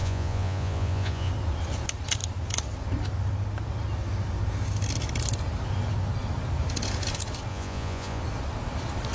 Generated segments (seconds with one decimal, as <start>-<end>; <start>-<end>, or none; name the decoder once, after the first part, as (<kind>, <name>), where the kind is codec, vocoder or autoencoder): 0.0-1.3 (vocoder, Vocos); 7.5-8.2